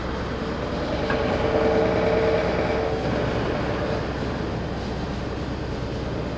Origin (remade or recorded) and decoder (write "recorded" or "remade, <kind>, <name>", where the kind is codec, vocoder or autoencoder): recorded